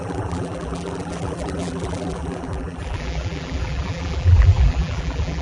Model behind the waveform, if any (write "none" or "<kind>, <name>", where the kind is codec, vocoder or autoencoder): vocoder, BigVGAN v2